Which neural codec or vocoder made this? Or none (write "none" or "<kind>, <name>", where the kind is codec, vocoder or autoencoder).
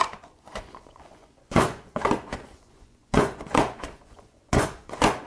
vocoder, Vocos